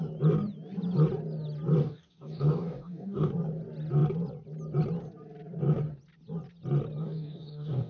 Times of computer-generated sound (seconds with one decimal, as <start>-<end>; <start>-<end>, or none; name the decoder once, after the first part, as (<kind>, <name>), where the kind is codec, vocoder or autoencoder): 1.8-3.3 (codec, DAC); 7.0-7.9